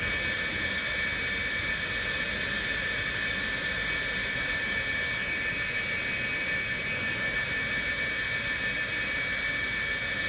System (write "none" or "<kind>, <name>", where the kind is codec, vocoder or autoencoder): none